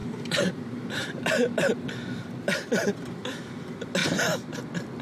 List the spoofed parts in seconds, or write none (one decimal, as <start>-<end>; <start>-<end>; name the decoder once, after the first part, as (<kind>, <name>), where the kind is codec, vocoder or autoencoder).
0.0-1.7 (vocoder, BigVGAN v2); 4.0-4.6